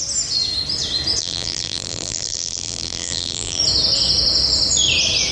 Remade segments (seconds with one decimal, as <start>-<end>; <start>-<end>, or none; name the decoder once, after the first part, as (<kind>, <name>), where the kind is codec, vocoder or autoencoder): 1.2-3.6 (vocoder, BigVGAN v2)

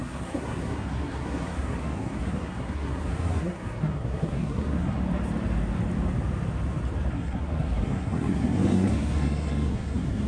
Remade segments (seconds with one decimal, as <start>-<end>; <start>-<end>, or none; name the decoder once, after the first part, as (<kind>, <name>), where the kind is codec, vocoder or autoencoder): 0.0-5.0 (codec, SNAC); 7.1-10.3

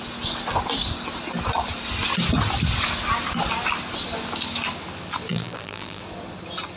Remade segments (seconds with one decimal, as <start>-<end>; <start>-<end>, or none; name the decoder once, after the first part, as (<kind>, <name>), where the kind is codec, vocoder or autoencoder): 5.3-6.0 (vocoder, BigVGAN v2)